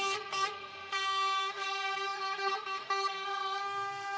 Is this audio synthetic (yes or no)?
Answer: yes